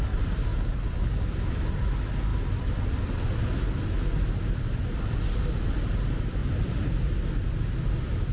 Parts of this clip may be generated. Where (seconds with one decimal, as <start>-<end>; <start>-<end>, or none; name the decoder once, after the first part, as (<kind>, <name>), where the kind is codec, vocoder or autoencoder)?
6.4-7.1 (vocoder, BigVGAN v2)